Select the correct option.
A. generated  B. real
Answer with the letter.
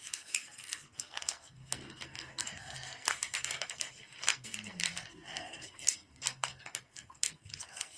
A